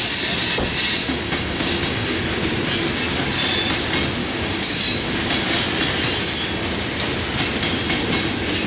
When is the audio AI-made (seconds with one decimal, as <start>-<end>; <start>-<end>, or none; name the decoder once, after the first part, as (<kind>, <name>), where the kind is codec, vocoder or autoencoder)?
1.0-2.2 (codec, DAC); 4.2-4.8